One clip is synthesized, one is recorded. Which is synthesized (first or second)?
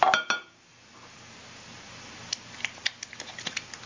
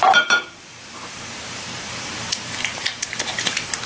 second